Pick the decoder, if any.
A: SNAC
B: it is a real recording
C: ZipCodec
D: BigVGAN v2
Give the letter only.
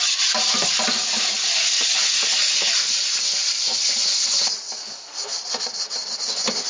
B